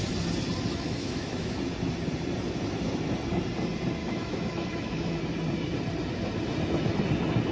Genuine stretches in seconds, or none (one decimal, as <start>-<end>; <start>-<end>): 0.0-0.7; 1.6-4.0; 5.2-7.5